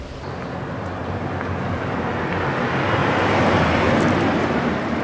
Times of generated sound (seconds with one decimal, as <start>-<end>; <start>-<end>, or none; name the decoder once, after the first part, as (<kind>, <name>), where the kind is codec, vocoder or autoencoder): 3.0-3.6 (vocoder, BigVGAN v2)